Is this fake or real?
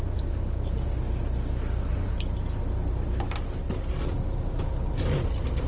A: real